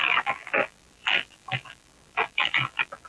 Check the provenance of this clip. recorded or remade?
remade